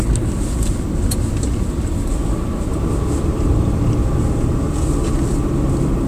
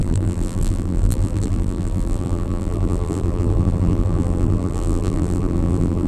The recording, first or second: first